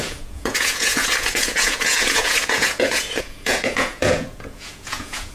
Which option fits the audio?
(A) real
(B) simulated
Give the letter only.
B